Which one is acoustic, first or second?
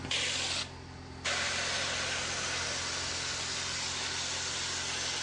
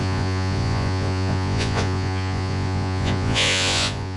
first